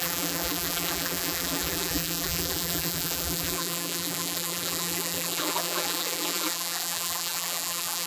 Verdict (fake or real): fake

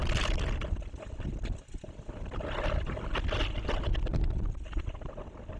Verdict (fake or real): real